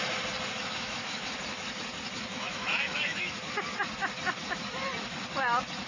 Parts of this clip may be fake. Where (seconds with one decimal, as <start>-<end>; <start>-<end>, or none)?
0.6-1.3; 2.3-3.3